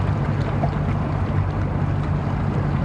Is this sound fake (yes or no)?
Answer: no